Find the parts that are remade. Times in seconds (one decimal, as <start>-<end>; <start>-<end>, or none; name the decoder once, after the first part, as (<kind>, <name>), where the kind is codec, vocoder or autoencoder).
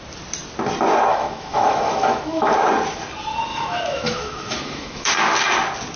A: 1.1-2.5 (autoencoder, DAC-VAE); 3.5-5.1